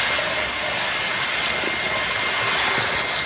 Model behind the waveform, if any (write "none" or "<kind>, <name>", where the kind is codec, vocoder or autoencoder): none